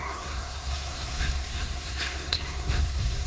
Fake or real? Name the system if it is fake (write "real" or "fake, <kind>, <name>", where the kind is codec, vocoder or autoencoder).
fake, codec, SNAC